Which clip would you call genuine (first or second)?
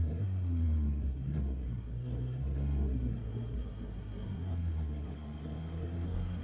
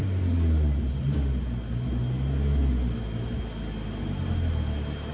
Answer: second